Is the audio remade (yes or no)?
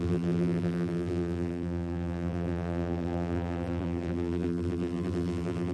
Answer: yes